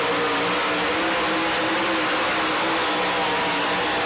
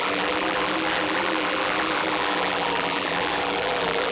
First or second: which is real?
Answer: first